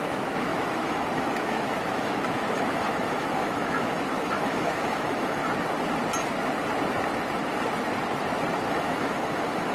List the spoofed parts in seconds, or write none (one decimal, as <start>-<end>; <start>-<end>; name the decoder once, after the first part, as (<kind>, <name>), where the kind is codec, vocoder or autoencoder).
0.0-5.4 (autoencoder, DAC-VAE); 8.7-9.7